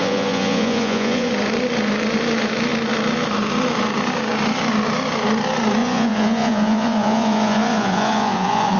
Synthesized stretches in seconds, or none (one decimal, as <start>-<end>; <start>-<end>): 0.0-1.3; 5.8-8.8